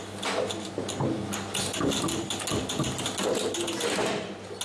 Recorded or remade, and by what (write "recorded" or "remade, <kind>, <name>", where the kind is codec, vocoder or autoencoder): recorded